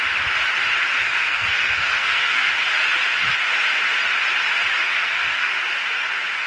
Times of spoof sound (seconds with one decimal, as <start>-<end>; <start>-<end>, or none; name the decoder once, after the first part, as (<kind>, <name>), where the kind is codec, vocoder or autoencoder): 1.0-2.5 (codec, SNAC); 4.8-5.6